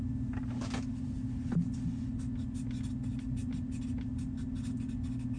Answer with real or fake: real